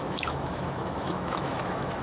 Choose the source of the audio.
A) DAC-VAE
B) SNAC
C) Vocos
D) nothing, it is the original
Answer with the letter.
A